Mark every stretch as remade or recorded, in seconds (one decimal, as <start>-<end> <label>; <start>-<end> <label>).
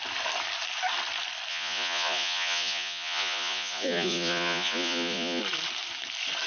0.0-1.5 recorded; 1.5-5.4 remade; 5.4-6.5 recorded